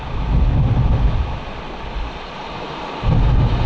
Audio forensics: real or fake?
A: real